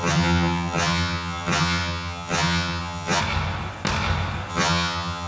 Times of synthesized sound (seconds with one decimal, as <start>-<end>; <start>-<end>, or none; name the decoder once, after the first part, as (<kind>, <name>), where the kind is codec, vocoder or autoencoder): 0.0-3.2 (vocoder, HiFi-GAN); 4.5-5.3